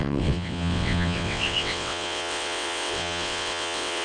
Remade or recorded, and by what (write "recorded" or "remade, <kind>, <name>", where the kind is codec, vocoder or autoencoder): remade, vocoder, WaveNeXt